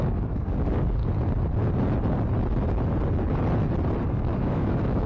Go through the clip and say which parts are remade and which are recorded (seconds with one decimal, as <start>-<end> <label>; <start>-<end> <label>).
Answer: 0.0-1.0 remade; 1.0-4.1 recorded; 4.1-5.1 remade